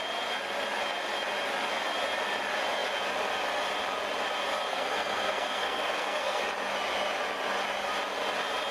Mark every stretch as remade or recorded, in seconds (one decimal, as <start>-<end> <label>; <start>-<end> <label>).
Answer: 0.0-4.7 recorded; 4.7-6.4 remade; 6.4-8.7 recorded